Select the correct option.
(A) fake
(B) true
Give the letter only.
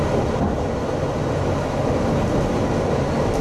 B